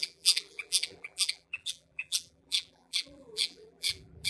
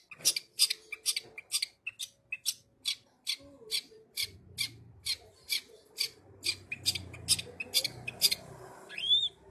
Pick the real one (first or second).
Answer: second